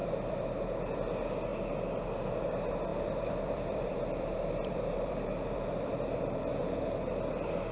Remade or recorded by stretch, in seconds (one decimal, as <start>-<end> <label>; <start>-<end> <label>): 0.0-0.8 remade; 0.8-2.9 recorded; 2.9-6.5 remade; 6.5-7.7 recorded